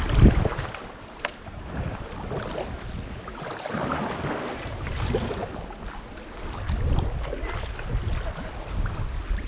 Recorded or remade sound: recorded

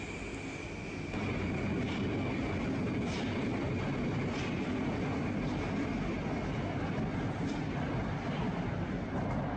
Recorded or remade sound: remade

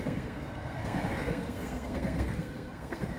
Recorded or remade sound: remade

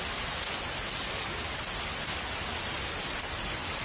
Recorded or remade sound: recorded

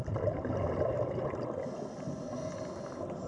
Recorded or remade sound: recorded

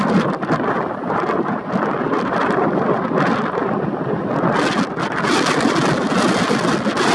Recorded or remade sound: recorded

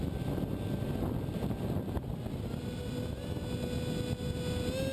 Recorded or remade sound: recorded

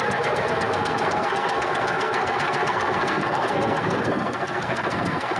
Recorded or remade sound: remade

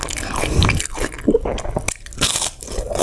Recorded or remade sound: recorded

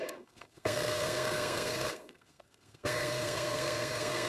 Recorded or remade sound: remade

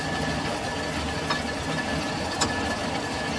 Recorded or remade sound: recorded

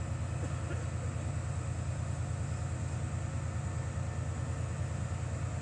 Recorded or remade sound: recorded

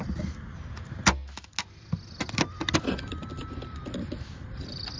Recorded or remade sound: recorded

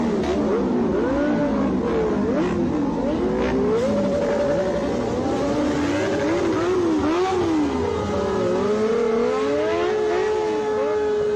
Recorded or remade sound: recorded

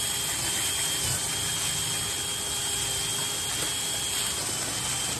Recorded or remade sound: recorded